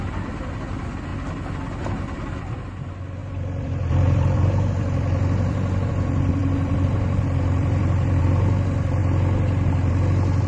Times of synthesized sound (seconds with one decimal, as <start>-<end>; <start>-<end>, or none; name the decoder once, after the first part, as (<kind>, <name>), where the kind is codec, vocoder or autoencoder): 3.2-5.9 (vocoder, BigVGAN v2); 6.4-8.2